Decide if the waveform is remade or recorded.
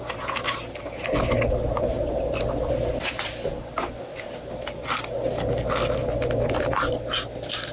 recorded